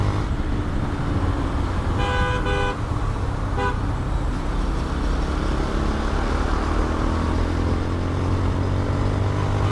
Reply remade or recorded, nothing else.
recorded